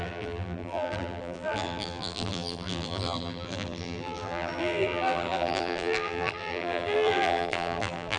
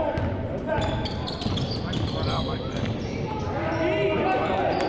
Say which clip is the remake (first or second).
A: first